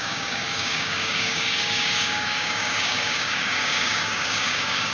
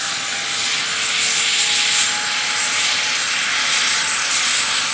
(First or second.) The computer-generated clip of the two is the first